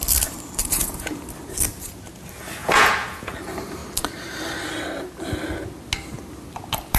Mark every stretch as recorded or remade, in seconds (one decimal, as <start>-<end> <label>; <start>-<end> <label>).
0.0-0.6 recorded; 0.6-1.2 remade; 1.2-2.6 recorded; 2.6-3.3 remade; 3.3-7.0 recorded